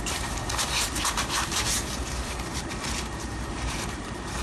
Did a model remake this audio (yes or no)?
yes